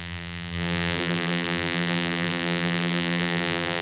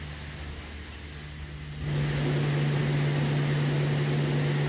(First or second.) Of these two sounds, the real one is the second